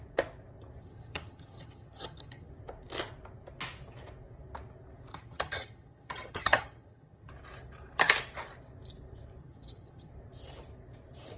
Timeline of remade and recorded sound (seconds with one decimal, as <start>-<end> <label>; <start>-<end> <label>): 0.0-0.8 recorded; 0.8-2.5 remade; 2.5-5.1 recorded; 5.1-7.3 remade; 7.3-9.4 recorded; 9.4-10.1 remade; 10.1-11.4 recorded